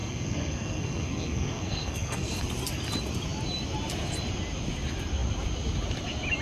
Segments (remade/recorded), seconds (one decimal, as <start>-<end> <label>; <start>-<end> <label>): 0.0-2.4 remade; 2.4-6.4 recorded